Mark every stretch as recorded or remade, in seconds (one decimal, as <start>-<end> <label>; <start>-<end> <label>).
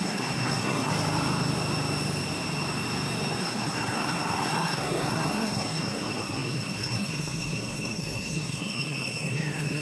0.0-0.9 remade; 0.9-3.4 recorded; 3.4-9.8 remade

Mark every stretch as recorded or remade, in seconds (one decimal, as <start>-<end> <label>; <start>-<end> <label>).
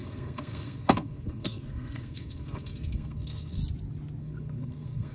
0.0-3.6 remade; 3.6-4.2 recorded; 4.2-5.1 remade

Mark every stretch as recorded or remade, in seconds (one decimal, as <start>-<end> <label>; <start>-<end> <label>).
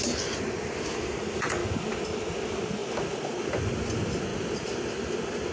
0.0-5.5 recorded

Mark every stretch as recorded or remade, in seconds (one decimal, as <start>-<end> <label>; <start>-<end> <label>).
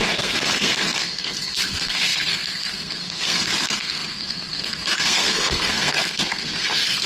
0.0-7.1 remade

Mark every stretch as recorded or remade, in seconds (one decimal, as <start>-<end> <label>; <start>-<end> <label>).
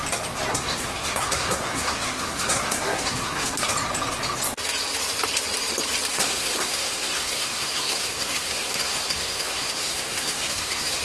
0.0-0.5 recorded; 0.5-3.7 remade; 3.7-6.1 recorded; 6.1-11.0 remade